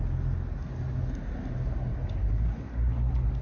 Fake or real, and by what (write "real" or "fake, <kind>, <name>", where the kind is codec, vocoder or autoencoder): real